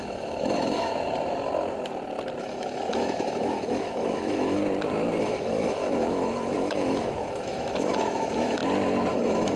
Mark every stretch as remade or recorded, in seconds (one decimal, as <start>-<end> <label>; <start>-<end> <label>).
0.0-0.9 remade; 0.9-2.4 recorded; 2.4-4.6 remade; 4.6-5.2 recorded; 5.2-8.6 remade; 8.6-9.1 recorded; 9.1-9.6 remade